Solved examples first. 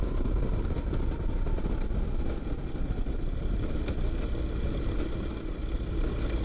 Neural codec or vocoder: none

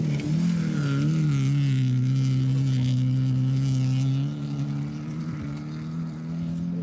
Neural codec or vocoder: none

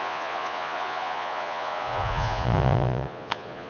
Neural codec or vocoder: vocoder, Vocos